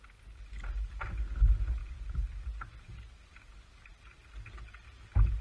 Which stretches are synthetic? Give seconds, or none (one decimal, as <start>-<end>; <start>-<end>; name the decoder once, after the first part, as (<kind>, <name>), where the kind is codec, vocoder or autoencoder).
none